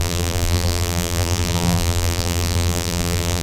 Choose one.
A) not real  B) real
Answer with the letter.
A